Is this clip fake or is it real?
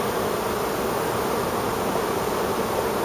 real